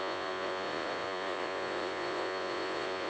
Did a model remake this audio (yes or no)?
yes